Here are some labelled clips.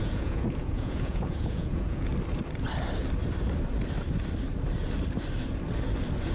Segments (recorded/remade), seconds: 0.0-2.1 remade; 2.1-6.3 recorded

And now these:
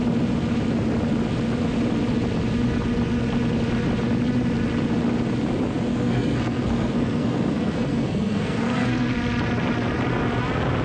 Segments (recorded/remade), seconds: 0.0-5.9 recorded; 5.9-9.1 remade; 9.1-10.8 recorded